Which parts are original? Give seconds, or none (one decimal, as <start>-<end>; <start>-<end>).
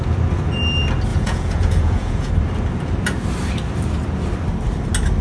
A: 0.0-1.1; 2.3-5.2